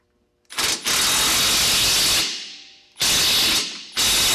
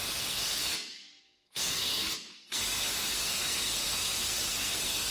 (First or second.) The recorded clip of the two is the first